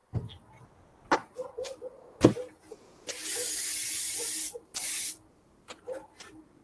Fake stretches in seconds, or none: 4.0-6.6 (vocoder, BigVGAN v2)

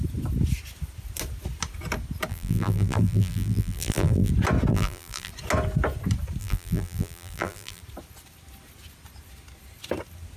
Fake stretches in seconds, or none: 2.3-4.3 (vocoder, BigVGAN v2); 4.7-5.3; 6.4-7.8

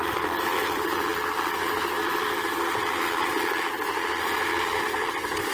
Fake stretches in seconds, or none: none

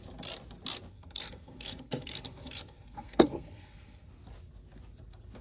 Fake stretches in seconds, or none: 0.9-4.1 (codec, SNAC)

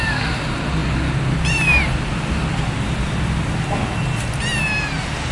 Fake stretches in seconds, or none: none

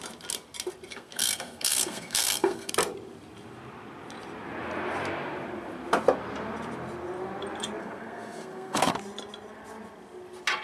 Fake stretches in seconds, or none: 0.9-2.7 (codec, SNAC); 7.8-8.9

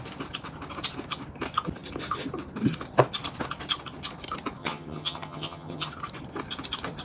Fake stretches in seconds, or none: 4.6-5.9 (vocoder, HiFi-GAN)

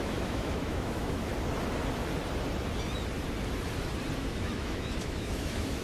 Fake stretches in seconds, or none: 0.0-1.3 (autoencoder, DAC-VAE); 4.2-5.8